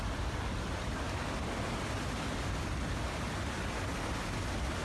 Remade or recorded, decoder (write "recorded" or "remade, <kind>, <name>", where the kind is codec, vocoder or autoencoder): recorded